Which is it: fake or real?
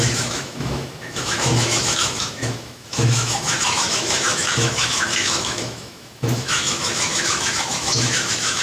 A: fake